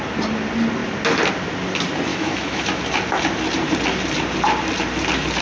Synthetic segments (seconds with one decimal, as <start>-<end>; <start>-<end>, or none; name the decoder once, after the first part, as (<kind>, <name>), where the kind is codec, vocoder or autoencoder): 2.1-2.8 (autoencoder, DAC-VAE)